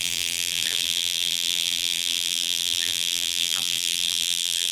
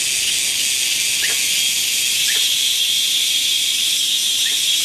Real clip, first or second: second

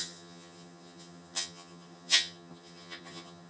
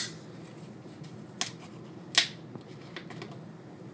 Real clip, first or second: second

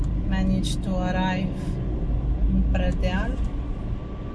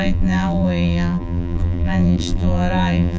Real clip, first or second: first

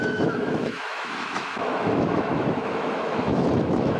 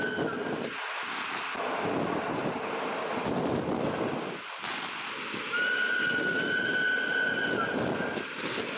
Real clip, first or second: second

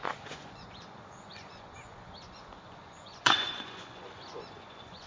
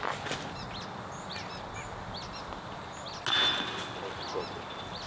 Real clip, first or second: second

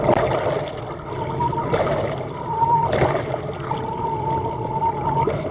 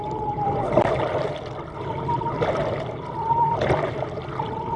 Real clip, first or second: first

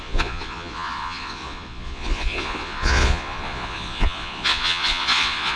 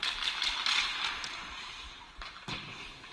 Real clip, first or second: second